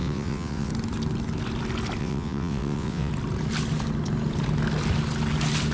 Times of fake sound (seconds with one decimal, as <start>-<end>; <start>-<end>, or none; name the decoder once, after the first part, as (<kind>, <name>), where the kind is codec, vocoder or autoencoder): 0.0-0.7 (vocoder, WaveNeXt); 2.0-3.1